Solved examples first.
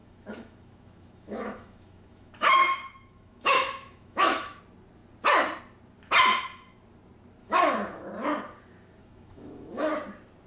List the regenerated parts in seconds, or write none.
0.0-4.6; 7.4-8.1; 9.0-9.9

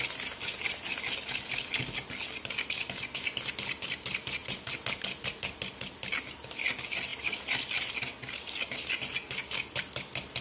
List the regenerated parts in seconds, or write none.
7.1-7.6

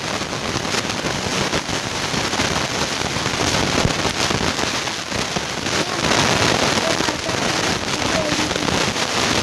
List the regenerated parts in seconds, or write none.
none

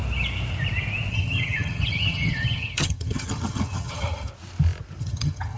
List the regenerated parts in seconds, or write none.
1.1-4.3; 5.0-5.6